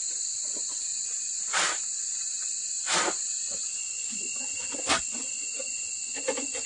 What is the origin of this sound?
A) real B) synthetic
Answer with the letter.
A